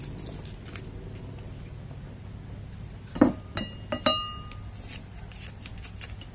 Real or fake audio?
real